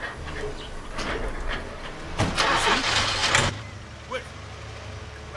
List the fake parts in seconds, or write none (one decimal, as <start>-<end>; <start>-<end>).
none

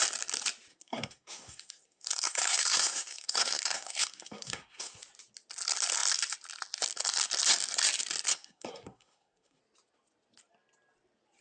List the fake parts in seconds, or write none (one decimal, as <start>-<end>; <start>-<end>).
0.7-5.0; 8.3-9.6

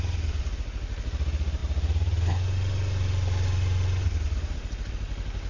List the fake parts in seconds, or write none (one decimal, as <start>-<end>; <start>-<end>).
none

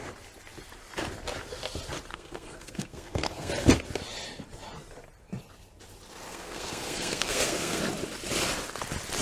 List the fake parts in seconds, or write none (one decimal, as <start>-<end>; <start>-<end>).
2.1-3.5; 6.3-7.8

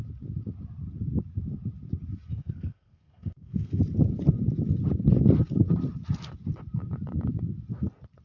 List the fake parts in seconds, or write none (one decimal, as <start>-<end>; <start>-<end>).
2.3-3.8

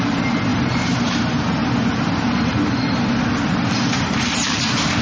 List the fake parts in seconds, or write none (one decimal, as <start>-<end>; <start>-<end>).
none

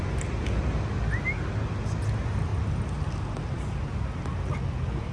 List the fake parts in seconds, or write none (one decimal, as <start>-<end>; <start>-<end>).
none